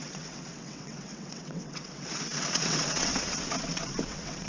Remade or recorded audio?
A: remade